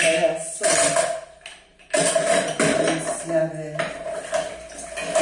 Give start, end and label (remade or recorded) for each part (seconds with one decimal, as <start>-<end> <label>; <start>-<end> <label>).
0.0-5.2 recorded